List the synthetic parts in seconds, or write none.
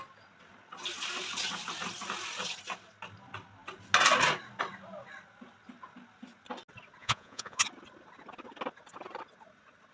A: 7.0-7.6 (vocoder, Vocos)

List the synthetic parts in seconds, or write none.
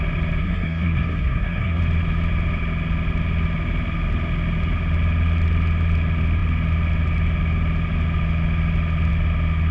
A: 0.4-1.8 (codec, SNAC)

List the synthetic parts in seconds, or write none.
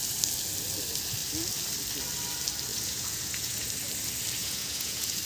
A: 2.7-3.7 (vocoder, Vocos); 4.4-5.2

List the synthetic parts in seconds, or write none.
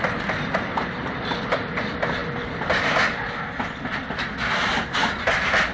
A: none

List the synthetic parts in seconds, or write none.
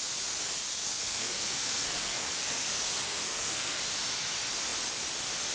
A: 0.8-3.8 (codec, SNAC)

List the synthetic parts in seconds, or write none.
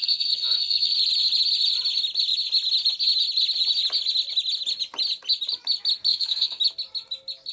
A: 0.0-0.9 (codec, SNAC); 6.1-6.6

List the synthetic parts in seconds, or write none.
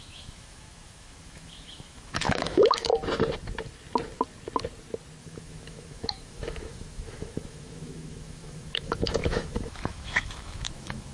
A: 0.0-2.9 (autoencoder, DAC-VAE); 5.2-11.1